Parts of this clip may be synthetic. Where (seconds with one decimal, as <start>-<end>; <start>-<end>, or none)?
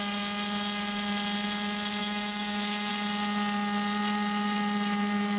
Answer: 2.0-2.9